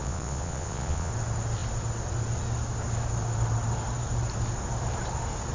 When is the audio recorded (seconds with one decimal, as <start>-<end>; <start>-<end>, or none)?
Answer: 1.1-5.5